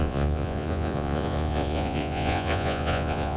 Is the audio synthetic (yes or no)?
yes